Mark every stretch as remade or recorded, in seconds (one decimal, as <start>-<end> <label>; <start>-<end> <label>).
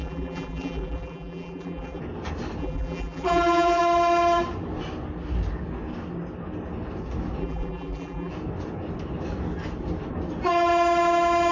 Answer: 0.0-2.0 remade; 2.0-2.6 recorded; 2.6-3.8 remade; 3.8-7.4 recorded; 7.4-8.3 remade; 8.3-11.5 recorded